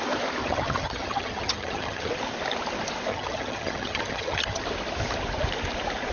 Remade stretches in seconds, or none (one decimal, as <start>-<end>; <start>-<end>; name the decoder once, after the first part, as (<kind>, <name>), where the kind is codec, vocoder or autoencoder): 0.4-2.1 (vocoder, HiFi-GAN); 3.1-4.6